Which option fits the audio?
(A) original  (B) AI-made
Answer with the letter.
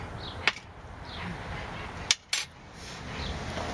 A